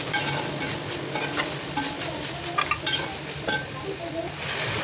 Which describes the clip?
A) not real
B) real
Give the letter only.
B